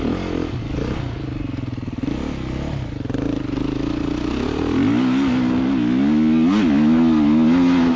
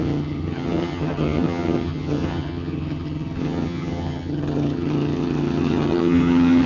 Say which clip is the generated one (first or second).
second